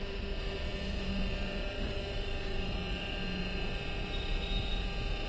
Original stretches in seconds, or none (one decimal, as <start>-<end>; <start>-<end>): 0.0-5.3